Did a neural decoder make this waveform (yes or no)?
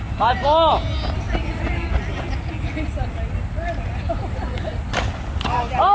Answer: no